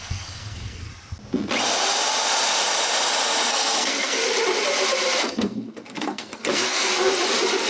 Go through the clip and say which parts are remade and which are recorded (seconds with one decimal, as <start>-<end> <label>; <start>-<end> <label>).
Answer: 0.0-0.9 remade; 0.9-3.5 recorded; 3.5-4.2 remade; 4.2-5.2 recorded; 5.2-6.9 remade; 6.9-7.7 recorded